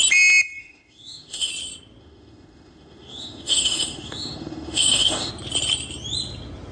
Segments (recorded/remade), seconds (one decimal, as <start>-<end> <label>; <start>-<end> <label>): 0.0-0.6 recorded; 0.6-1.5 remade; 1.5-2.0 recorded; 2.0-5.3 remade; 5.3-6.7 recorded